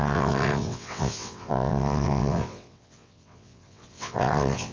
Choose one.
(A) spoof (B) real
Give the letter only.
A